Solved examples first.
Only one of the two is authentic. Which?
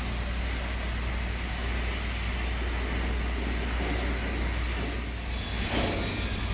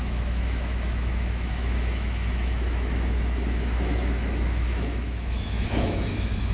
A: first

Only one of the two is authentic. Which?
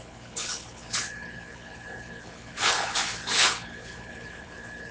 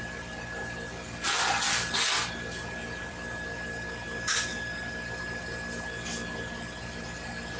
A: second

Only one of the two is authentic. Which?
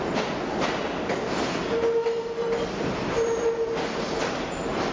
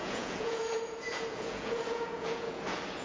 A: first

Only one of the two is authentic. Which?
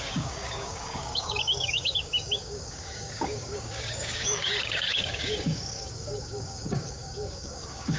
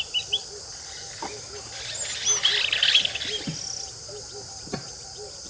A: second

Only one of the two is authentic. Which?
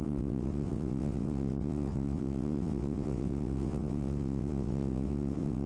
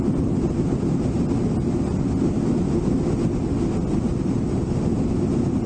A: second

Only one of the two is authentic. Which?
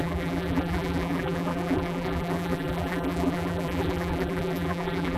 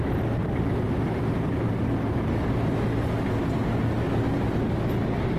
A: second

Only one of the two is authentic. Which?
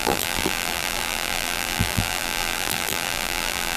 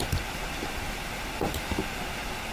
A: second